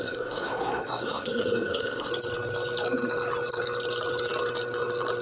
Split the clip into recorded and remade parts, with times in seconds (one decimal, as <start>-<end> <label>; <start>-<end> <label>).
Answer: 0.0-2.1 remade; 2.1-5.2 recorded